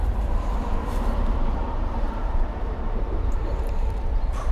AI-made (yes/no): yes